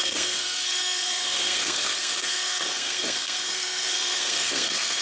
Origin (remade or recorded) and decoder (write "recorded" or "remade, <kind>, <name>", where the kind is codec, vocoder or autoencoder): remade, codec, SNAC